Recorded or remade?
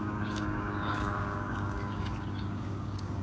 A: remade